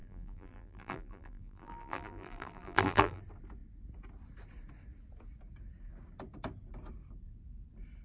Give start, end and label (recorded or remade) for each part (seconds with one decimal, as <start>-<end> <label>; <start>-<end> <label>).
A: 0.0-3.2 remade; 3.2-8.0 recorded